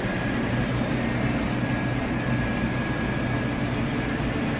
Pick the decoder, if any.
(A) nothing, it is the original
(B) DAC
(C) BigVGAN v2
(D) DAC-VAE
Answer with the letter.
A